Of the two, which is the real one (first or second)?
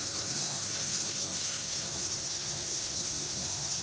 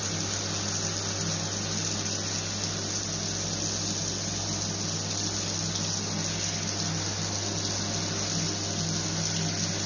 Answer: second